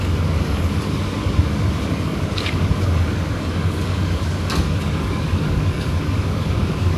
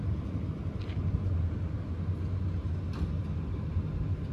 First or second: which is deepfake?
first